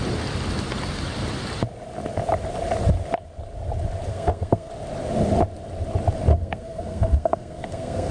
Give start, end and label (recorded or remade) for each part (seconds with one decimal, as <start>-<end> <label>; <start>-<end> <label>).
0.0-4.1 recorded; 4.1-4.7 remade; 4.7-6.3 recorded; 6.3-8.1 remade